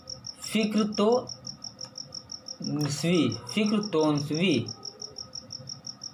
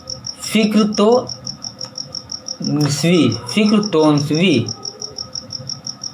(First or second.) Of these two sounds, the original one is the first